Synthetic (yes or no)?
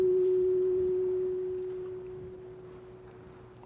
yes